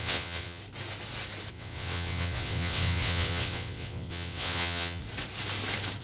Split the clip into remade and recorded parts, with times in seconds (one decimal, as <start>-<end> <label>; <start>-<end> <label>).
0.0-0.6 remade; 0.6-1.5 recorded; 1.5-5.0 remade; 5.0-6.0 recorded